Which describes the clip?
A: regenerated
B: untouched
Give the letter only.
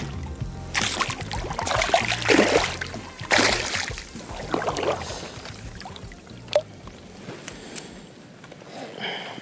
B